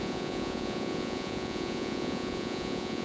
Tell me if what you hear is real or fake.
fake